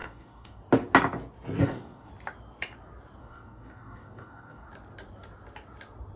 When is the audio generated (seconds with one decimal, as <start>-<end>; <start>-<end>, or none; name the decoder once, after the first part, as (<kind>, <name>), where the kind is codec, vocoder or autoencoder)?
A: 0.0-0.6 (codec, DAC); 1.6-2.1; 3.2-4.7